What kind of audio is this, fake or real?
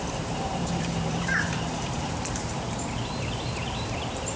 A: fake